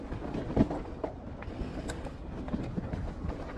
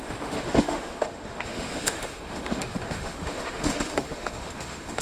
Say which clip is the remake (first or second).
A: second